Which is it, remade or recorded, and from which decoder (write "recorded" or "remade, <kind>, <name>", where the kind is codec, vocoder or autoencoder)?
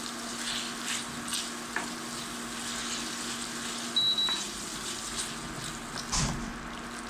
recorded